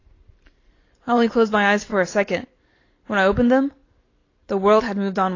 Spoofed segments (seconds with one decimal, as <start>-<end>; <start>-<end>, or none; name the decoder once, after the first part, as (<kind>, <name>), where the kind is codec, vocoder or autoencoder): 0.0-1.3 (vocoder, BigVGAN v2); 1.9-3.0; 4.2-4.8